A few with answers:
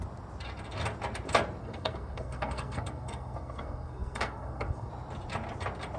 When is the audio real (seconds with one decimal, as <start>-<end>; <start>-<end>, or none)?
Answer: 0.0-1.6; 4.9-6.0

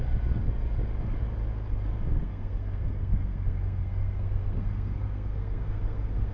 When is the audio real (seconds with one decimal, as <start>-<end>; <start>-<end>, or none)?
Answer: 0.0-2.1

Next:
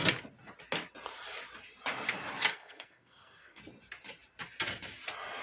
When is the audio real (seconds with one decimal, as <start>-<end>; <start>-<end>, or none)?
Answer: 0.0-2.5; 3.6-5.4

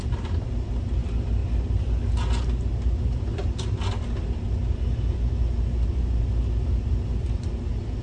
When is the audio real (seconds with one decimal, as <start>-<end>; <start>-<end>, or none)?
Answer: 0.0-8.0

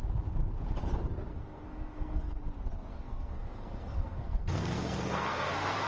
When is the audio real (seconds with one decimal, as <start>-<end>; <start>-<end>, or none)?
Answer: 0.0-1.3; 2.4-2.9